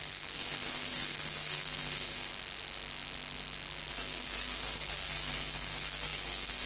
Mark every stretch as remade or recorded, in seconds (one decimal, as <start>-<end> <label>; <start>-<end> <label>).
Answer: 0.0-2.3 remade; 2.3-3.9 recorded; 3.9-6.7 remade